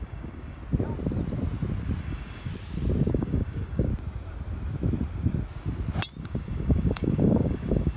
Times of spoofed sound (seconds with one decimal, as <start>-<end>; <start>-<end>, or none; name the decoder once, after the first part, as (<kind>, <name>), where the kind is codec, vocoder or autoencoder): 0.0-0.6 (codec, DAC); 2.0-2.5; 3.1-3.9; 6.2-8.0